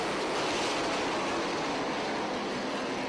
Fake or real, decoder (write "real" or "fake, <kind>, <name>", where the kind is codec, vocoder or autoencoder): real